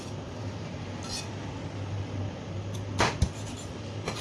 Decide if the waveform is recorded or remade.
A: recorded